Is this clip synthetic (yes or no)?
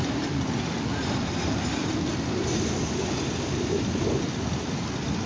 yes